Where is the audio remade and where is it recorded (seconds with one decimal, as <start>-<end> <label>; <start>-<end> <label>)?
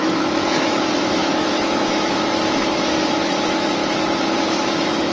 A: 0.0-5.1 remade